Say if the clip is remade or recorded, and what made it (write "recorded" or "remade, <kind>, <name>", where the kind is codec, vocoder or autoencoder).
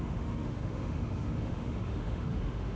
remade, autoencoder, DAC-VAE